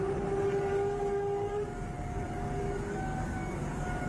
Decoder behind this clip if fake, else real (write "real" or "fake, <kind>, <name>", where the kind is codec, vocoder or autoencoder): fake, codec, DAC